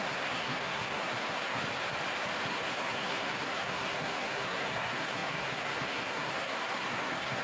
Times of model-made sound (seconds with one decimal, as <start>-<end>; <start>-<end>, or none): 0.0-1.6; 2.5-7.4